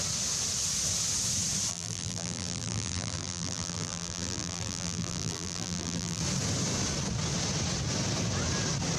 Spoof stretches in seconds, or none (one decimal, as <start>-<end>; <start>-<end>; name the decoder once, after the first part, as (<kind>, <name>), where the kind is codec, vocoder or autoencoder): 1.7-6.2 (vocoder, BigVGAN v2)